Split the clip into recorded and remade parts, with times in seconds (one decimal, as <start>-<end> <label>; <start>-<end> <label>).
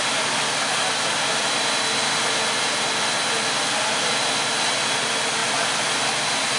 0.0-6.6 recorded